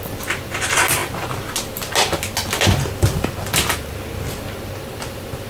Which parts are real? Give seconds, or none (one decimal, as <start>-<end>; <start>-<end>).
0.0-5.5